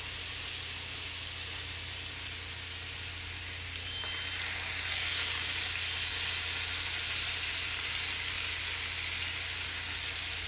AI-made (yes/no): no